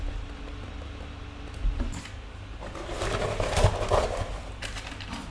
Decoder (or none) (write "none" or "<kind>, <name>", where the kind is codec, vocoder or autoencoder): none